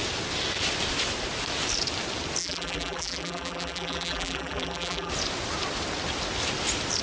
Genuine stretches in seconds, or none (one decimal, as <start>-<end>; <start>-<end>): 0.0-2.4; 5.1-7.0